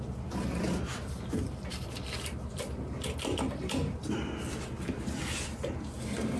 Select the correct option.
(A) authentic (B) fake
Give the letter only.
A